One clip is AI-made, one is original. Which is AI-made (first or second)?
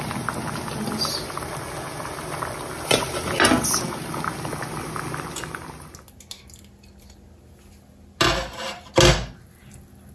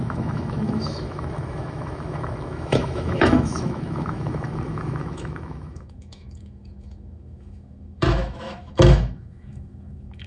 second